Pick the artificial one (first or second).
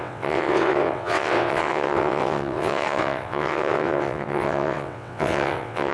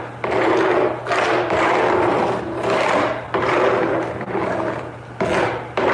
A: first